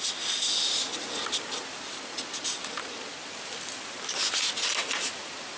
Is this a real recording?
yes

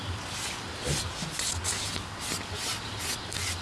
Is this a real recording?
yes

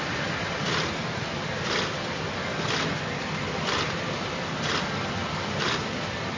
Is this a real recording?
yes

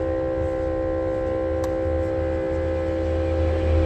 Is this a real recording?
yes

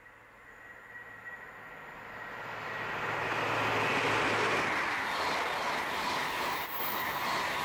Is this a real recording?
yes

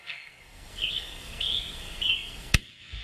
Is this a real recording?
no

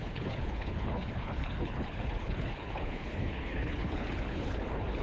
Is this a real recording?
no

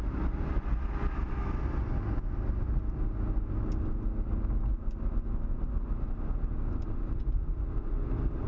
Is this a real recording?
yes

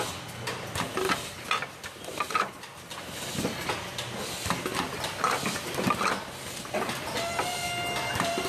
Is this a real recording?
yes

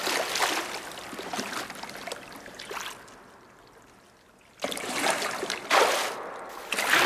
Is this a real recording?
yes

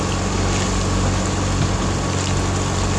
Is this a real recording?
yes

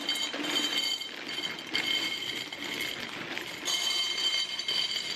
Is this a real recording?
yes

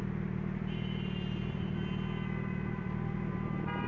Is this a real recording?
yes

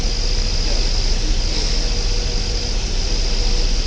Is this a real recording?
yes